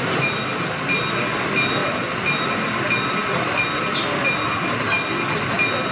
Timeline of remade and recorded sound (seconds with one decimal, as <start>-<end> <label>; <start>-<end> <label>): 0.0-5.9 recorded

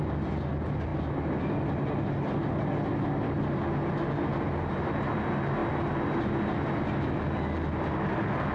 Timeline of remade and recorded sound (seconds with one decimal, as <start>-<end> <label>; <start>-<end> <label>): 0.0-8.5 recorded

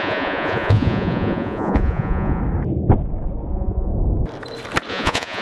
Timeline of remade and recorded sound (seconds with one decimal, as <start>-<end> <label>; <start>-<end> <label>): 0.0-2.4 remade; 2.4-3.5 recorded; 3.5-3.9 remade; 3.9-4.9 recorded; 4.9-5.4 remade

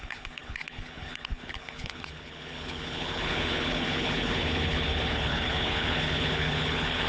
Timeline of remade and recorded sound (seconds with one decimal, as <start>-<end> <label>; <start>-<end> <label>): 0.0-7.1 remade

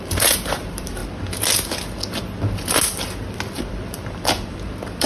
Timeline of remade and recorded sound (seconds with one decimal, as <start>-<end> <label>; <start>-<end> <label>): 0.0-1.0 remade; 1.0-3.7 recorded; 3.7-5.1 remade

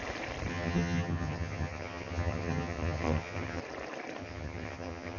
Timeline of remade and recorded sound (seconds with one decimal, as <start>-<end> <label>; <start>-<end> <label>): 0.0-0.5 recorded; 0.5-3.6 remade; 3.6-4.2 recorded; 4.2-5.2 remade